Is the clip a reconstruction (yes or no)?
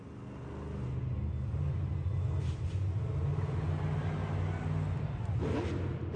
no